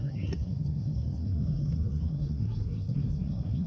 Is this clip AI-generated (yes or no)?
yes